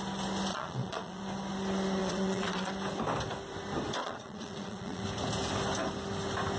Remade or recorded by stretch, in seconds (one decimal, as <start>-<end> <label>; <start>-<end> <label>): 0.0-0.5 recorded; 0.5-1.2 remade; 1.2-2.0 recorded; 2.0-2.7 remade; 2.7-4.0 recorded; 4.0-5.0 remade; 5.0-6.6 recorded